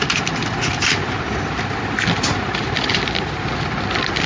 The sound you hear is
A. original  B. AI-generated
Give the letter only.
A